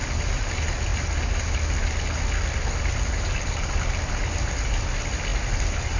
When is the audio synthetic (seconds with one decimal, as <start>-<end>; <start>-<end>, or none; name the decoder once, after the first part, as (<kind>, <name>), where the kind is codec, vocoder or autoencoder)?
none